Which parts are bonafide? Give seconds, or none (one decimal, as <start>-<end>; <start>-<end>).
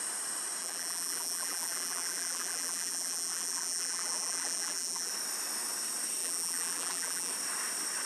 0.0-0.6; 5.1-6.2; 7.3-8.1